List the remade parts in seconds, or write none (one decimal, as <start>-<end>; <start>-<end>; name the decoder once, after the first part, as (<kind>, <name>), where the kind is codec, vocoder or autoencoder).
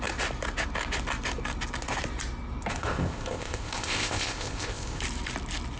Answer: 2.7-5.0 (codec, ZipCodec)